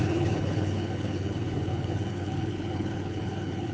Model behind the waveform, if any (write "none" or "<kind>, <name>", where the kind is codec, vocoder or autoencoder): codec, HILCodec